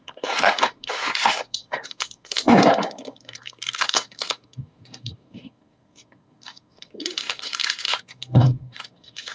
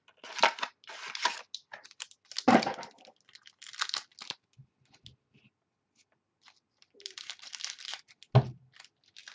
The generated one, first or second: first